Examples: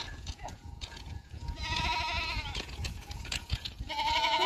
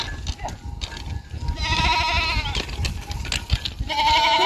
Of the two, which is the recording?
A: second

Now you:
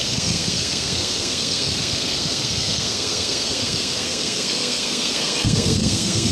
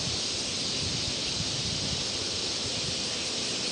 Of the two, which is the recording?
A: second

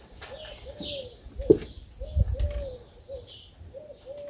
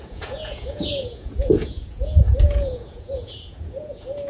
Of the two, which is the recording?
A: first